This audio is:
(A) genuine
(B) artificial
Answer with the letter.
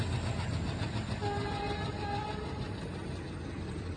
A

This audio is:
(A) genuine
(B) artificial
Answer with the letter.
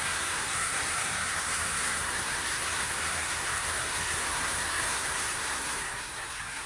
B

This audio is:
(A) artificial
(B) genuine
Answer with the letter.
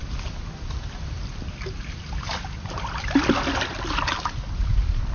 B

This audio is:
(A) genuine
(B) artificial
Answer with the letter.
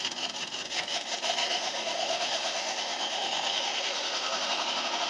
B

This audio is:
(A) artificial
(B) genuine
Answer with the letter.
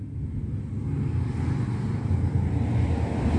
B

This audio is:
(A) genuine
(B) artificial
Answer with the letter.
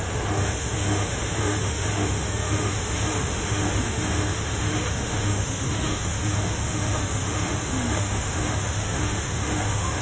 B